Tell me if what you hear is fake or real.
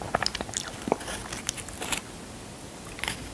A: real